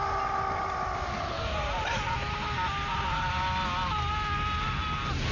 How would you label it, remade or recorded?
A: recorded